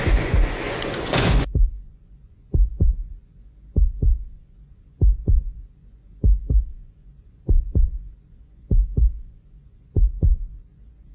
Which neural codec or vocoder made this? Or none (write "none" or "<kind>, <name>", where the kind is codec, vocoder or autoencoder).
vocoder, Vocos